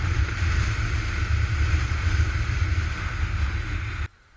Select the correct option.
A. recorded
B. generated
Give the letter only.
A